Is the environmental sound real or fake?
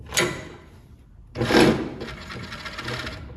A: real